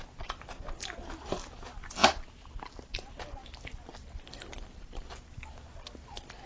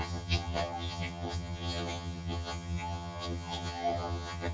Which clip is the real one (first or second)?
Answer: first